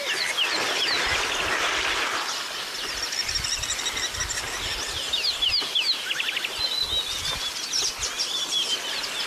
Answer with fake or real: real